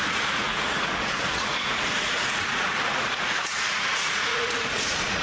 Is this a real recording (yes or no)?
no